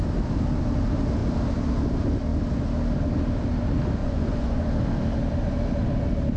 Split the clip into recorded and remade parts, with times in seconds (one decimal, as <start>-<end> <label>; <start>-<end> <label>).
0.0-4.0 recorded; 4.0-4.7 remade; 4.7-6.4 recorded